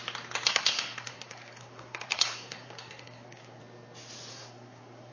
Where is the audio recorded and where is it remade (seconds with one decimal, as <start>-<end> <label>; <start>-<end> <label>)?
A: 0.0-0.5 recorded; 0.5-3.6 remade; 3.6-4.3 recorded; 4.3-5.1 remade